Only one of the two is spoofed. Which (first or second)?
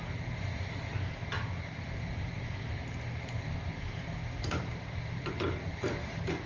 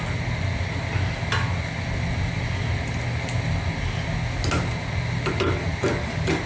first